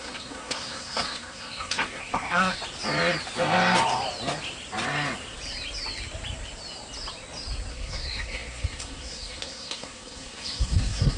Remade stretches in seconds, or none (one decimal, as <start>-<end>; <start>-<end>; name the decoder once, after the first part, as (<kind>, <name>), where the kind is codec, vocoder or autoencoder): 0.0-2.6 (codec, SNAC); 7.7-11.2